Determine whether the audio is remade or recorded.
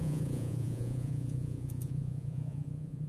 remade